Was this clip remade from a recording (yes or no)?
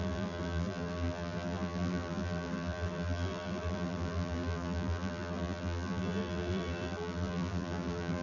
yes